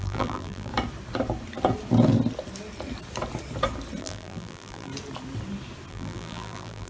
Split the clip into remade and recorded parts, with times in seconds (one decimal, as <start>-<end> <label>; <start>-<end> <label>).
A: 0.0-0.7 remade; 0.7-4.0 recorded; 4.0-4.9 remade; 4.9-5.9 recorded; 5.9-6.9 remade

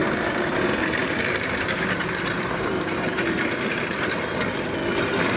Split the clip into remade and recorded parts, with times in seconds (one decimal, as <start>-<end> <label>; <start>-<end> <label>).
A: 0.0-1.0 recorded; 1.0-4.2 remade; 4.2-5.4 recorded